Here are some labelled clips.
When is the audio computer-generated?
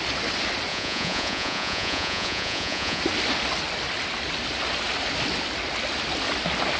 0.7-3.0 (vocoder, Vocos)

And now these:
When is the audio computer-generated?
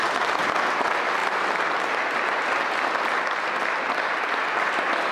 none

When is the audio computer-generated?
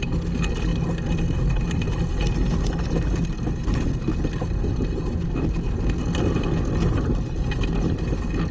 none